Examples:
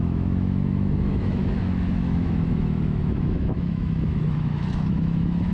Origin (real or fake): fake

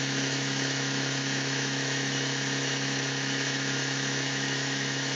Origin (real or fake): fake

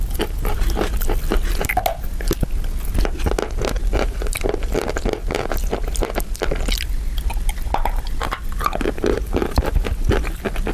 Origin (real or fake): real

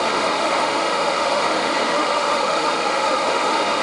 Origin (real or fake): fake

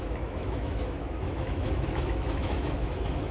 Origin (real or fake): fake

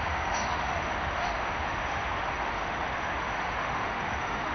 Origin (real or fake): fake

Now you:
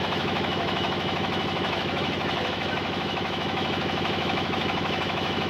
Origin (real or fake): fake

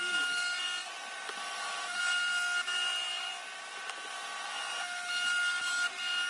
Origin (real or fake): real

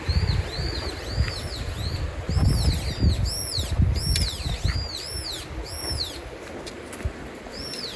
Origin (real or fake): real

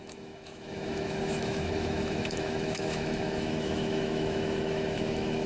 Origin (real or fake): fake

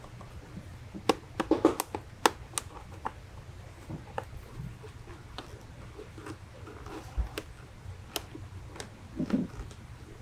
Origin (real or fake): real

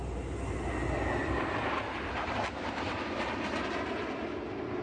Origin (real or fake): real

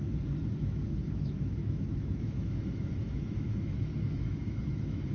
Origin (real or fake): fake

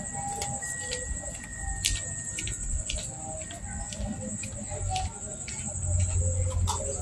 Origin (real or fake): real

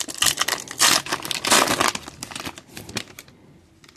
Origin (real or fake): real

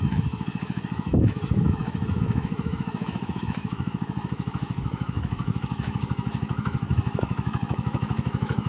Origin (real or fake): fake